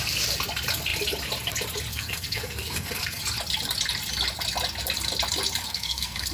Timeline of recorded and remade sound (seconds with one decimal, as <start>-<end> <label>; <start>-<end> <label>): 0.0-1.9 recorded; 1.9-3.2 remade; 3.2-5.6 recorded; 5.6-6.3 remade